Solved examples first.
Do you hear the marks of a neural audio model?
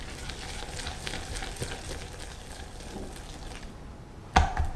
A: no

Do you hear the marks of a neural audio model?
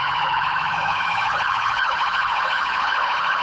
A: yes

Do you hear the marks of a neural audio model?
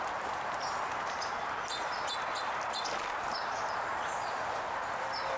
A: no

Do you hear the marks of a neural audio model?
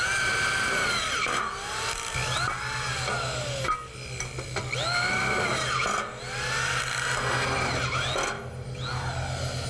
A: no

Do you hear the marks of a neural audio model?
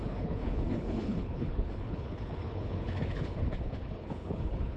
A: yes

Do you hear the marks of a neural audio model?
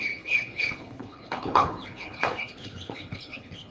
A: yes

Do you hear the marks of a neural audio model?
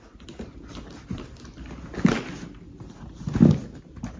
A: no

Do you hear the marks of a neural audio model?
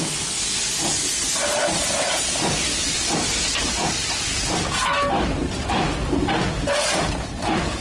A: no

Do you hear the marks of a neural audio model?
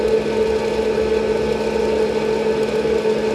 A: no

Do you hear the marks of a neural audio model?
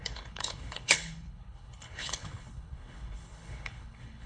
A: yes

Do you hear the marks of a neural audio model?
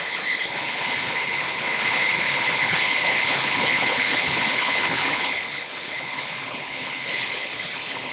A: yes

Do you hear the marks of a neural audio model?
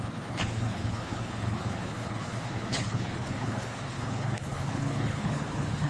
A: yes